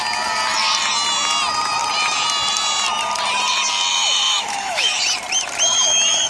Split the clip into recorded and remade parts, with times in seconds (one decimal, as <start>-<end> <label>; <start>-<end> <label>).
0.0-3.9 recorded; 3.9-5.0 remade; 5.0-5.7 recorded; 5.7-6.3 remade